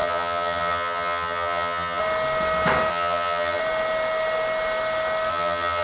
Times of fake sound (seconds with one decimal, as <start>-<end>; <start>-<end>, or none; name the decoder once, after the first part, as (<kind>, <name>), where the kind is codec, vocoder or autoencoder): 0.0-2.0 (vocoder, HiFi-GAN); 2.9-3.6; 5.3-5.8